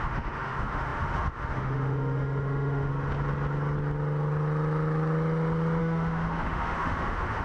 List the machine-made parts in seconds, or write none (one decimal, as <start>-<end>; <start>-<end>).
0.0-2.9; 5.8-7.4